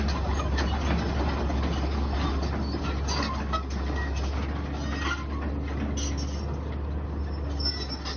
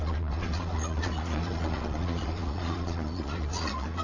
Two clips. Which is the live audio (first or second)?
first